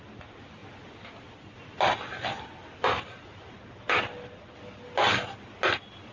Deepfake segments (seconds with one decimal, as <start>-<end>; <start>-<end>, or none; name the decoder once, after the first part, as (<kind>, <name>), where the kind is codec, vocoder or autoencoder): none